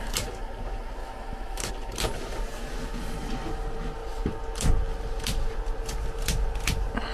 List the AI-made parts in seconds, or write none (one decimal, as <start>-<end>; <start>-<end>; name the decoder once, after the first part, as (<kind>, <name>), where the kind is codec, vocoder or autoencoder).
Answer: 1.0-1.7 (autoencoder, DAC-VAE)